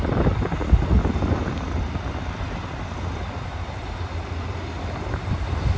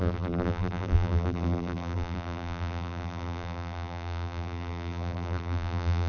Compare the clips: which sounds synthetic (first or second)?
second